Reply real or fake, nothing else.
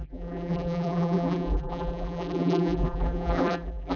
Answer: fake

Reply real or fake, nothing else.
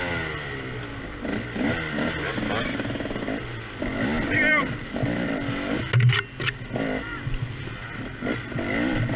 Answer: real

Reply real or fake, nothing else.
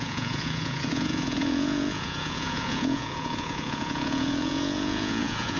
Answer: fake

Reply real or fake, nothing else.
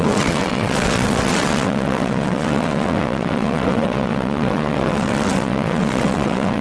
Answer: fake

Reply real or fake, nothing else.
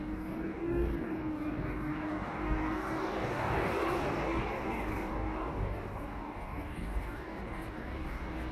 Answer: fake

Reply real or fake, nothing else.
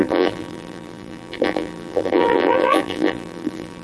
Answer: fake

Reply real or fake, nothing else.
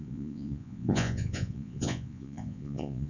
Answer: fake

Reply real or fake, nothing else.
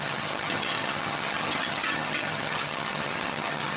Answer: fake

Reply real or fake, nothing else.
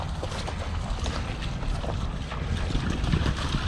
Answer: fake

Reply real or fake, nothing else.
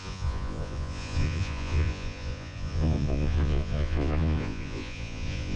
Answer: fake